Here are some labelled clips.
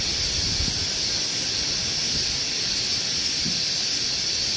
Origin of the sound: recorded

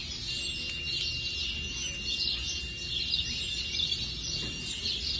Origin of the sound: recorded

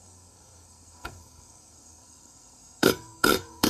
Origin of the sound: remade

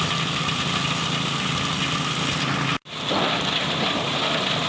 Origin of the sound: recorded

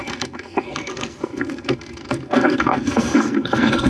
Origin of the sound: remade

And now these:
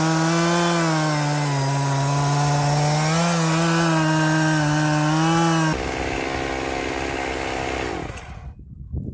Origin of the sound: recorded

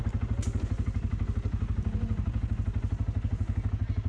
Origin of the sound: recorded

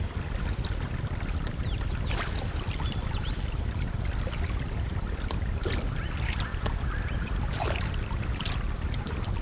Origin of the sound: recorded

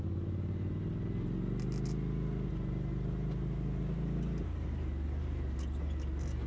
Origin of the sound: recorded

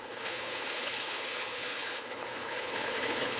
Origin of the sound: remade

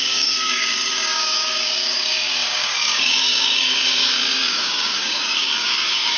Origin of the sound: remade